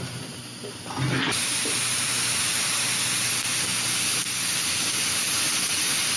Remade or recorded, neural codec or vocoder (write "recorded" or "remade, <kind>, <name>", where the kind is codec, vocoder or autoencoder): recorded